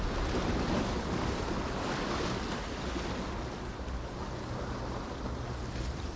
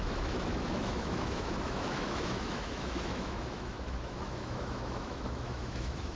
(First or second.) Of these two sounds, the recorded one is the first